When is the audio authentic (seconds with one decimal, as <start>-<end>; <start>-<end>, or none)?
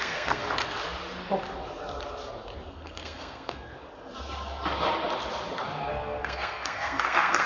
0.4-2.7; 3.7-5.9